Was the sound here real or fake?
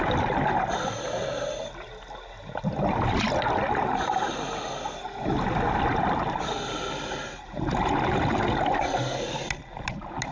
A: real